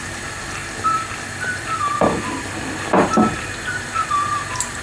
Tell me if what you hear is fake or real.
real